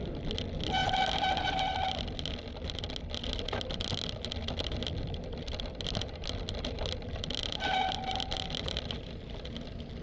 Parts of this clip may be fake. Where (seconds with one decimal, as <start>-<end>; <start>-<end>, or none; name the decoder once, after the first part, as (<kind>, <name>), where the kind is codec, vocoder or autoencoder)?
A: none

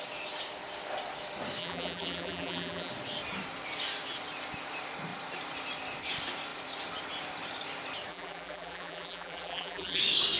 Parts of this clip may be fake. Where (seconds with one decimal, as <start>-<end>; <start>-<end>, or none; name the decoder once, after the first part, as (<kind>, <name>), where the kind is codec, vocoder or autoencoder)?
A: 1.6-2.9 (vocoder, BigVGAN v2); 8.1-10.0

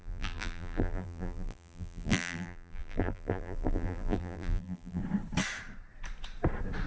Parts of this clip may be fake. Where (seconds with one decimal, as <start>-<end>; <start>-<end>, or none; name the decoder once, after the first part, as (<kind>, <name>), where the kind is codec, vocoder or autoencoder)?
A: 0.0-5.0 (vocoder, BigVGAN v2)

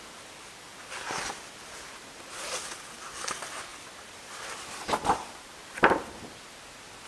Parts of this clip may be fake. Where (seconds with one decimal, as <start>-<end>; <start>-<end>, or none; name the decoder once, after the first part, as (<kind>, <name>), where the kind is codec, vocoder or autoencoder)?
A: 3.7-4.3 (vocoder, BigVGAN v2)

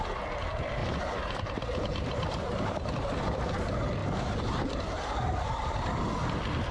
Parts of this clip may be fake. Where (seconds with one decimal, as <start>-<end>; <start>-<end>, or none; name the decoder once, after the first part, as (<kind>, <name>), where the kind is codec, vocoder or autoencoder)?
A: 0.8-3.4 (vocoder, BigVGAN v2)

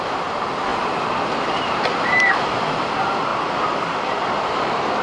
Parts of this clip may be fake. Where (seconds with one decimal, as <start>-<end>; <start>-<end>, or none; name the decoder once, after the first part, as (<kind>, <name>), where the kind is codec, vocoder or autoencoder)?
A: 0.0-3.3 (vocoder, BigVGAN v2); 4.0-5.0

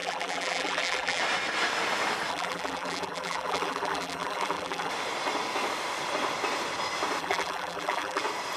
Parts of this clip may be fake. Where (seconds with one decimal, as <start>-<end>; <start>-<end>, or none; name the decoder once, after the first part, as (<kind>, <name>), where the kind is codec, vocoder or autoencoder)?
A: 0.0-1.2 (vocoder, BigVGAN v2); 2.3-4.9; 7.2-8.2